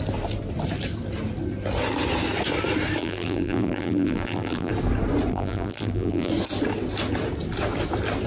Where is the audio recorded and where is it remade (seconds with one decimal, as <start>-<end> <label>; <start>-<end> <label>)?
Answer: 0.0-3.0 recorded; 3.0-4.7 remade; 4.7-5.3 recorded; 5.3-6.3 remade; 6.3-8.3 recorded